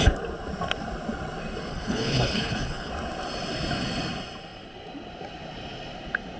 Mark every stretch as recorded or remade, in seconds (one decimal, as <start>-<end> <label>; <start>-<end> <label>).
0.0-1.7 recorded; 1.7-2.9 remade; 2.9-6.4 recorded